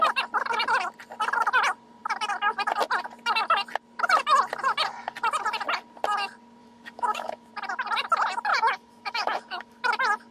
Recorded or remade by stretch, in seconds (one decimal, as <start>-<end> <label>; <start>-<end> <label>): 0.0-6.6 recorded; 6.6-7.5 remade; 7.5-8.5 recorded; 8.5-9.8 remade; 9.8-10.3 recorded